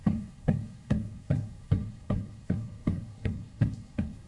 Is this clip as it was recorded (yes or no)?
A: no